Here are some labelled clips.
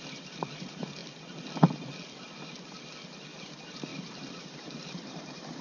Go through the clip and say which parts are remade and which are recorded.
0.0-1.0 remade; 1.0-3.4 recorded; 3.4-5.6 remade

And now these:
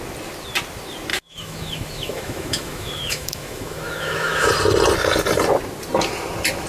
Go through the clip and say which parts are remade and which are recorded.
0.0-1.1 recorded; 1.1-4.5 remade; 4.5-6.7 recorded

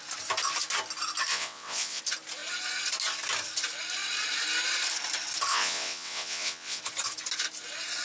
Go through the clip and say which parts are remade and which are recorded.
0.0-1.3 recorded; 1.3-2.0 remade; 2.0-5.5 recorded; 5.5-6.8 remade; 6.8-8.0 recorded

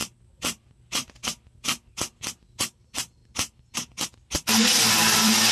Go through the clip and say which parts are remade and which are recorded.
0.0-3.2 remade; 3.2-5.5 recorded

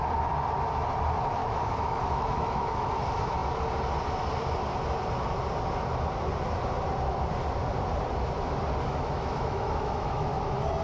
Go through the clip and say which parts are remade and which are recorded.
0.0-1.4 recorded; 1.4-2.9 remade; 2.9-8.9 recorded; 8.9-10.3 remade; 10.3-10.8 recorded

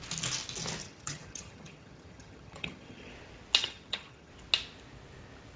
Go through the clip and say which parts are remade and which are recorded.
0.0-0.8 recorded; 0.8-3.1 remade; 3.1-3.6 recorded; 3.6-4.3 remade; 4.3-5.6 recorded

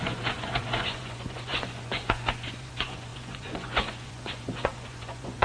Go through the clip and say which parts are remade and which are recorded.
0.0-5.4 remade